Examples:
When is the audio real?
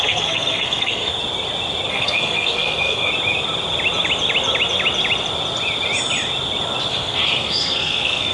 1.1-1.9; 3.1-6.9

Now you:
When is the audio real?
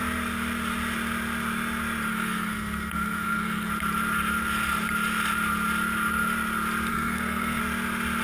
0.0-2.1; 3.7-6.9; 7.6-8.2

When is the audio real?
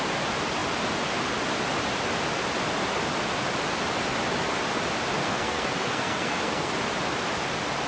0.0-5.2; 6.7-7.9